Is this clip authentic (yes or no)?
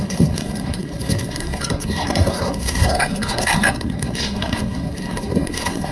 no